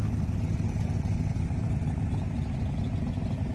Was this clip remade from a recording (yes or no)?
no